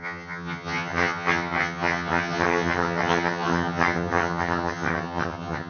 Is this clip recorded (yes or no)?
no